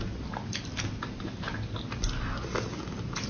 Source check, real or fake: real